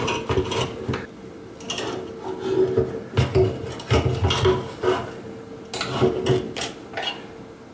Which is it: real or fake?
real